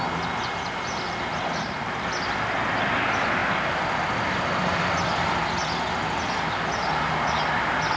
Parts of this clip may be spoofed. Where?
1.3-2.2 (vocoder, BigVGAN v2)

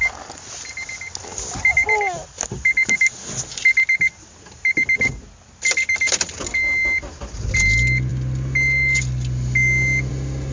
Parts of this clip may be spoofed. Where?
none

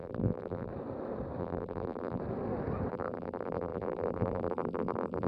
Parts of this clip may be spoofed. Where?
0.0-0.7 (vocoder, BigVGAN v2); 1.4-2.2; 2.9-5.3

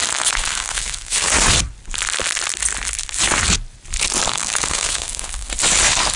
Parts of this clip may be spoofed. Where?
0.4-1.3 (codec, SNAC); 4.3-5.5

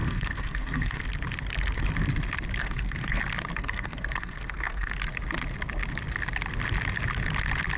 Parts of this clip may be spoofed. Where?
0.0-1.0 (codec, SNAC); 2.6-3.2; 3.6-4.9

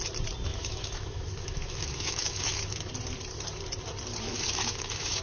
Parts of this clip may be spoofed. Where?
0.5-2.9 (autoencoder, DAC-VAE); 4.3-5.2

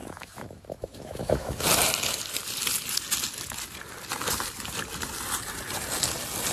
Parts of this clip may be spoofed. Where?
0.0-1.6 (autoencoder, DAC-VAE)